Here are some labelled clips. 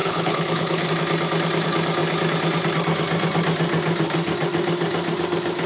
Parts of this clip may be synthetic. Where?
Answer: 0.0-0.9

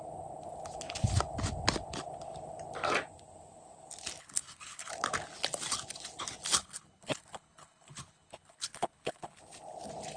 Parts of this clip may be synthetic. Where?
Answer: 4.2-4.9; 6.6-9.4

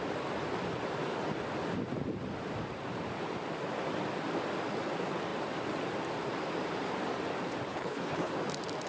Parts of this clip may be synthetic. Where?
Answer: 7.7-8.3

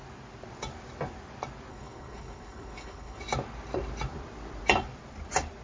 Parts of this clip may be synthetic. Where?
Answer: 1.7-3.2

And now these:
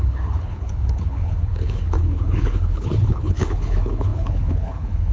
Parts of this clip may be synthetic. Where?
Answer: 0.0-5.1